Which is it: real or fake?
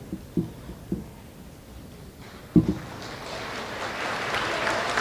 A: real